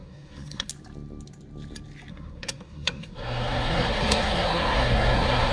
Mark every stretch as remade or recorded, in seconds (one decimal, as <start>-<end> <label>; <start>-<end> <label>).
0.0-0.7 remade; 0.7-2.1 recorded; 2.1-5.5 remade